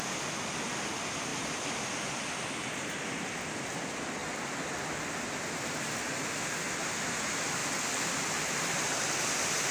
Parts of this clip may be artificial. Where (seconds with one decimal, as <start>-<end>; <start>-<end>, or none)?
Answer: none